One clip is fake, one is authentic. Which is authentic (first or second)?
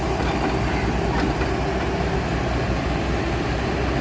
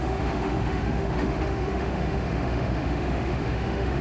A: first